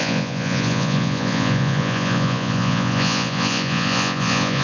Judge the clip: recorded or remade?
remade